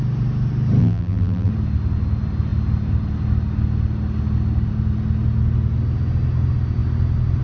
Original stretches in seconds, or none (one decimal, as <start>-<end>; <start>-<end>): 0.0-0.8; 1.5-7.4